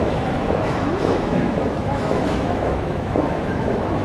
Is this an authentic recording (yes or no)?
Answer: no